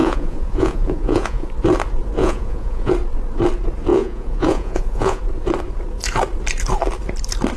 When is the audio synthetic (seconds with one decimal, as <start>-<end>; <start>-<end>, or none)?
0.0-1.5; 2.2-2.9; 3.9-5.2